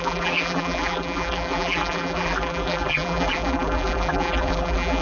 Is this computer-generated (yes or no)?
yes